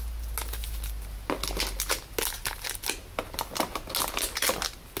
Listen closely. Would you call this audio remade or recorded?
recorded